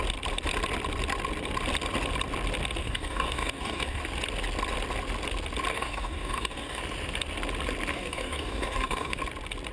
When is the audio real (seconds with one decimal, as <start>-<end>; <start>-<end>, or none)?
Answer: 0.0-2.8; 4.0-5.7; 6.8-7.9; 9.2-9.7